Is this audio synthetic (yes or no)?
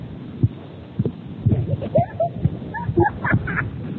no